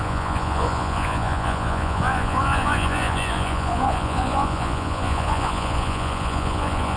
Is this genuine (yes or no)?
no